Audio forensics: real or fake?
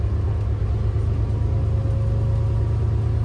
real